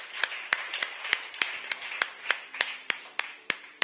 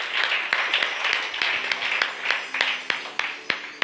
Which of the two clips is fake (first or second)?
first